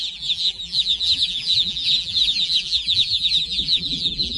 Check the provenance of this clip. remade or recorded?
remade